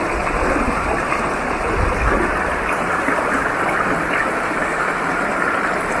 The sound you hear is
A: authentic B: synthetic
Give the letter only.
B